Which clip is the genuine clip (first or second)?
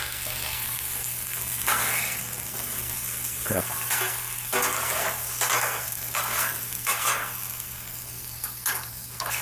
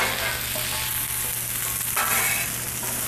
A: second